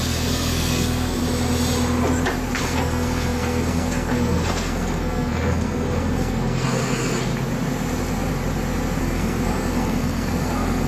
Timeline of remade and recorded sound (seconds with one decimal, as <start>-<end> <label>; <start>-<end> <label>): 0.0-1.2 remade; 1.2-2.6 recorded; 2.6-7.3 remade; 7.3-9.0 recorded; 9.0-10.9 remade